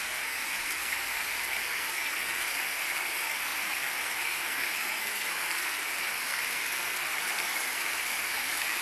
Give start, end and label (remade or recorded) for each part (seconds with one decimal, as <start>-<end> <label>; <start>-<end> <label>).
0.0-8.8 remade